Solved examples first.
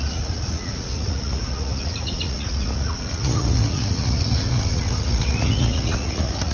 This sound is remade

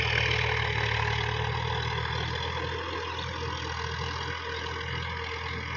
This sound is recorded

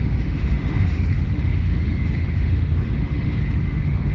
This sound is remade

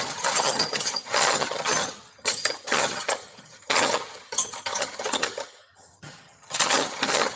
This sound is remade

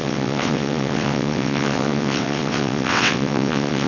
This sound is remade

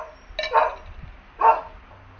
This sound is recorded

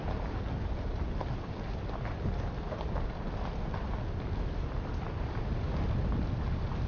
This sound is recorded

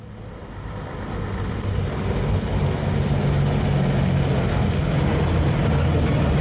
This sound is recorded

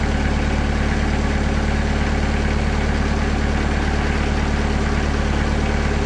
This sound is recorded